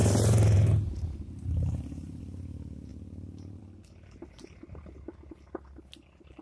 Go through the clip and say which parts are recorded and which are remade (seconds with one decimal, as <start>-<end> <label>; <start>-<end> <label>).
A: 0.0-2.2 remade; 2.2-2.9 recorded; 2.9-3.6 remade; 3.6-6.4 recorded